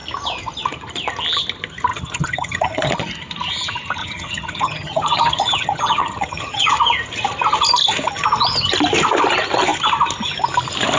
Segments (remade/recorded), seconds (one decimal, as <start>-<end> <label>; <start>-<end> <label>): 0.0-1.9 recorded; 1.9-2.9 remade; 2.9-4.0 recorded; 4.0-6.7 remade; 6.7-11.0 recorded